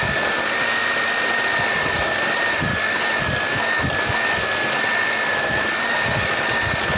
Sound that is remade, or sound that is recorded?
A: recorded